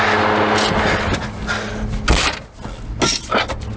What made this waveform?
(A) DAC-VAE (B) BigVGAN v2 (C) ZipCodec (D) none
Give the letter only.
D